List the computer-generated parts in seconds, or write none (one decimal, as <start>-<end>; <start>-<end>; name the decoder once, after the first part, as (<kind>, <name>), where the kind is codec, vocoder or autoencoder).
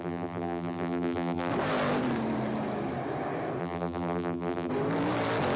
0.0-1.5 (vocoder, BigVGAN v2); 3.6-4.7